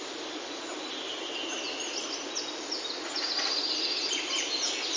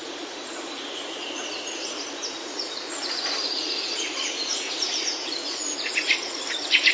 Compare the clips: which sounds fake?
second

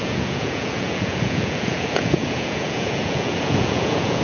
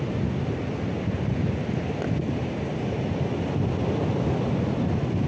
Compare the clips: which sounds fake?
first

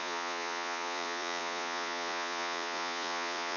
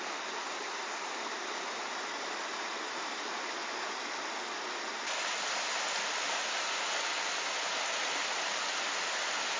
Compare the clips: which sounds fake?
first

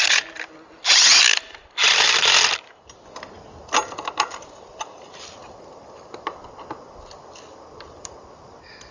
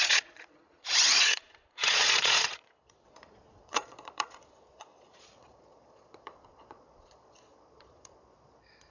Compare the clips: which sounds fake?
second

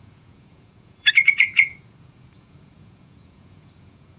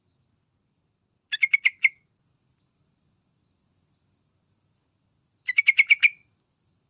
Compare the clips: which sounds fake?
first